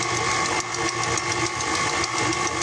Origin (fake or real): real